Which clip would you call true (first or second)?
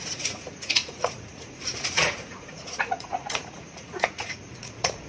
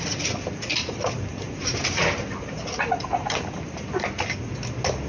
second